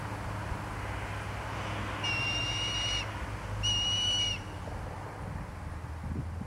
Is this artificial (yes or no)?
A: no